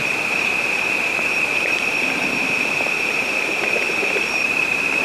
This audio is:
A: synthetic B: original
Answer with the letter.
A